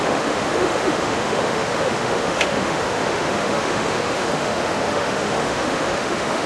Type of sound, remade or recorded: remade